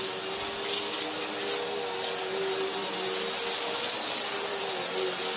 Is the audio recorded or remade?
recorded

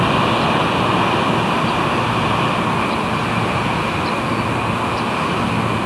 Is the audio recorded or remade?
recorded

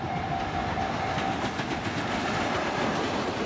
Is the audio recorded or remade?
recorded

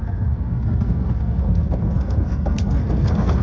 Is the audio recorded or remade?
remade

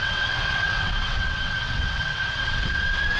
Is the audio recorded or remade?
remade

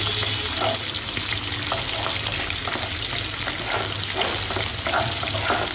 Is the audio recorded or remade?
recorded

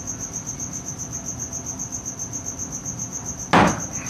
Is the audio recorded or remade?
recorded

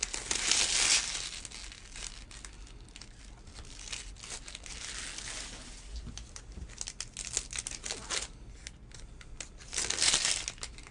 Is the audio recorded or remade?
recorded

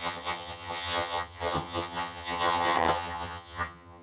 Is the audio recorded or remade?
remade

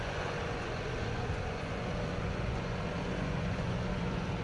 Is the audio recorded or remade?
remade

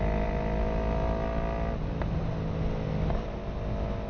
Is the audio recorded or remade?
recorded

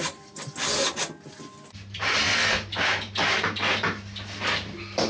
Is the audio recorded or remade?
recorded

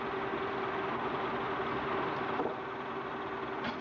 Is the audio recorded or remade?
recorded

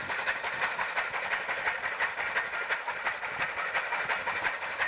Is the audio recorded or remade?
recorded